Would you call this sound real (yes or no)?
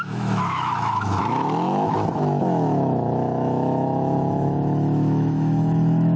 no